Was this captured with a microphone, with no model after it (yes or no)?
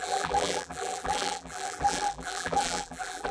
no